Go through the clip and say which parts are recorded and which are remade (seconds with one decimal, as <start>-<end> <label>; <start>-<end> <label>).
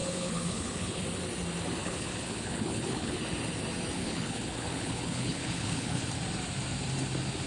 0.0-1.0 remade; 1.0-1.8 recorded; 1.8-3.2 remade; 3.2-4.0 recorded; 4.0-6.1 remade; 6.1-7.5 recorded